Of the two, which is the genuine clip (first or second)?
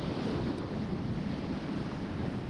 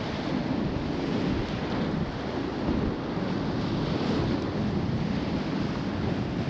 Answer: second